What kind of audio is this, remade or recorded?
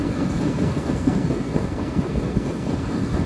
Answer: remade